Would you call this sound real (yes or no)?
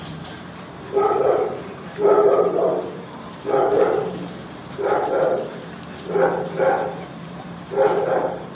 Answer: no